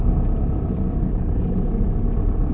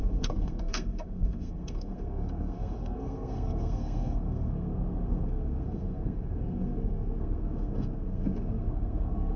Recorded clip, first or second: first